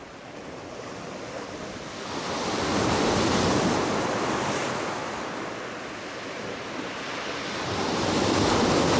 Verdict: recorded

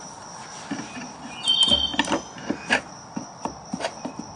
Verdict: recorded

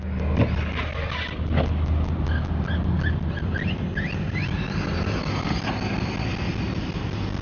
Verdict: recorded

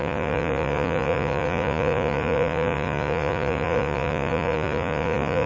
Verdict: remade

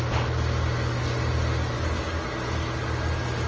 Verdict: recorded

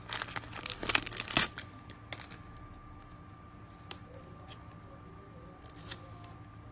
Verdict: recorded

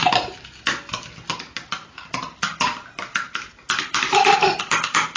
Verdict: recorded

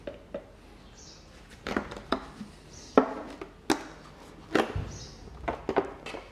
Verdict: recorded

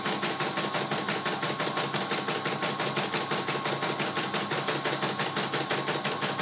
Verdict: recorded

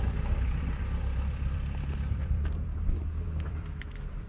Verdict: remade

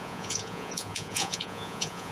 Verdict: remade